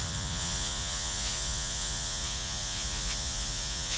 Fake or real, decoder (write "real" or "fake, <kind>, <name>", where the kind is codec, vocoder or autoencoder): fake, vocoder, Vocos